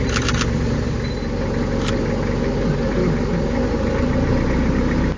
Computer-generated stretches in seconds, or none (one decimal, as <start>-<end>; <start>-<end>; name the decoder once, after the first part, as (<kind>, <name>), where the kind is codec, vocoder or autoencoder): none